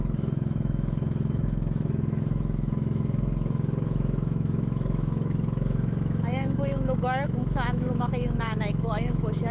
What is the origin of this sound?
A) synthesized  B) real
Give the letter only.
A